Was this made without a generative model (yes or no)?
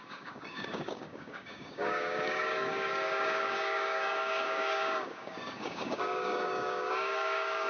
no